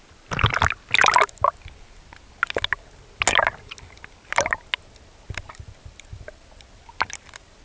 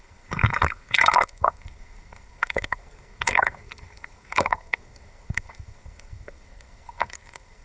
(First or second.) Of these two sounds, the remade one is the second